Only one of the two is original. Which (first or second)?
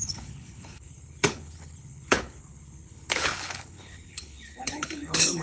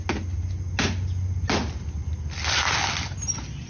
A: second